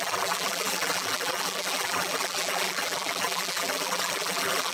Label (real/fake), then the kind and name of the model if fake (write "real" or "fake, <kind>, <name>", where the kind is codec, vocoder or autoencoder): fake, vocoder, BigVGAN v2